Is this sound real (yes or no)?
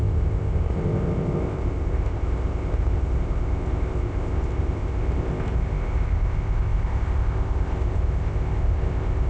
no